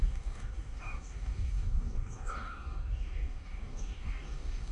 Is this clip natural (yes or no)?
no